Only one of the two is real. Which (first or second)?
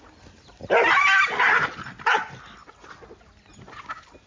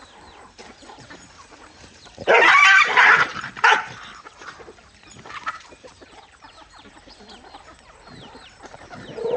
first